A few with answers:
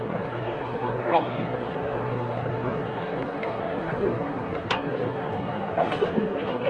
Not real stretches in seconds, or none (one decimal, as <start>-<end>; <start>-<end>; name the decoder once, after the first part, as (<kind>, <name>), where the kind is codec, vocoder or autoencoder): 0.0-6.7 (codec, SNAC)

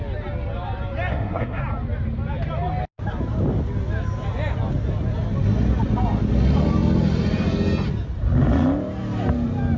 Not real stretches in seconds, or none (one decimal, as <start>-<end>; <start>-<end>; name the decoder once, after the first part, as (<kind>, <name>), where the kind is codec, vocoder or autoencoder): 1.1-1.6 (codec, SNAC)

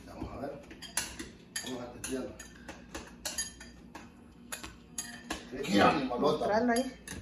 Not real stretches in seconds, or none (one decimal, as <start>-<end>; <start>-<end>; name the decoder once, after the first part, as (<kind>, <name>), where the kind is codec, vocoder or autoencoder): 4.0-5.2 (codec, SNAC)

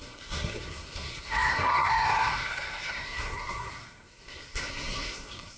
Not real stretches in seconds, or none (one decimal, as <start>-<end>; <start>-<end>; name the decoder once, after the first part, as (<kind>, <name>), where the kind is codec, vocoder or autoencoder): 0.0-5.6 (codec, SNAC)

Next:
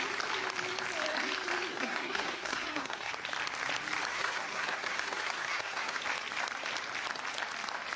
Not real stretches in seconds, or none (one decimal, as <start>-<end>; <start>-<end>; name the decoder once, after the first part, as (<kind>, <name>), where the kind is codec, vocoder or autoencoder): 1.7-3.1 (codec, SNAC); 4.1-6.0